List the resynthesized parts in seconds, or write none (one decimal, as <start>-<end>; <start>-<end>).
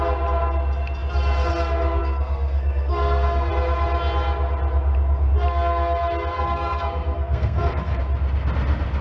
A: 2.0-3.5; 6.3-8.0